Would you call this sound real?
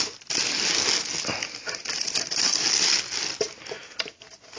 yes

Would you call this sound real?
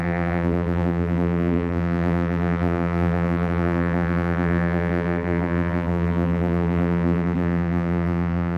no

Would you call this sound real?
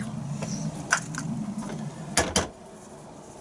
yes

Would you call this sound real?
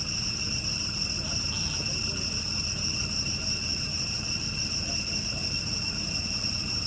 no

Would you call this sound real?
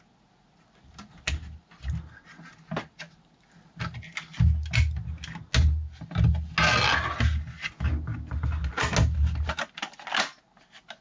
yes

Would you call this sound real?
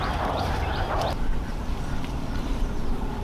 no